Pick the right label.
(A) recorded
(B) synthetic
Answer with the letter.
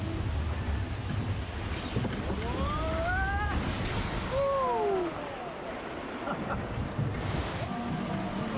A